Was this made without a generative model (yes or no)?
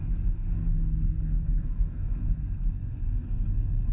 no